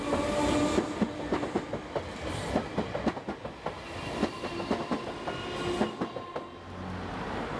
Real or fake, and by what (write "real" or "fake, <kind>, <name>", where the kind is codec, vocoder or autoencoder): real